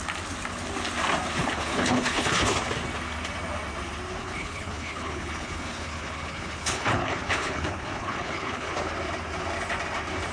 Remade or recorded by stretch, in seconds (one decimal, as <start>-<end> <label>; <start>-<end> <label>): 0.0-1.4 recorded; 1.4-2.6 remade; 2.6-4.2 recorded; 4.2-8.9 remade; 8.9-10.3 recorded